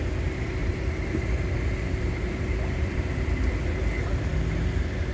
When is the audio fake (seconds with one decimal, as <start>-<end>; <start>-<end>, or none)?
0.6-3.5